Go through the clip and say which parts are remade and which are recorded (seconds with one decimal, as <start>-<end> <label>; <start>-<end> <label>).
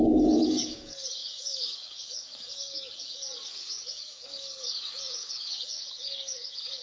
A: 0.0-6.8 remade